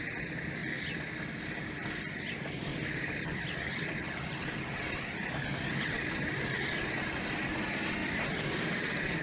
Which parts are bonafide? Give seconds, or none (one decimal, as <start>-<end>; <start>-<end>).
0.0-0.6; 1.4-2.7; 7.2-8.0